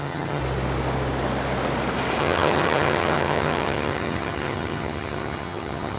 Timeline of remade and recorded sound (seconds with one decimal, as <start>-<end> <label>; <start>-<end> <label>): 0.0-0.4 remade; 0.4-2.2 recorded; 2.2-6.0 remade